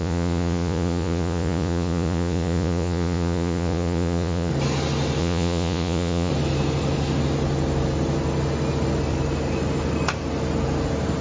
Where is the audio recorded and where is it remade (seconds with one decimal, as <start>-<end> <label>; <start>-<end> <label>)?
0.0-4.5 remade; 4.5-5.2 recorded; 5.2-6.3 remade; 6.3-11.2 recorded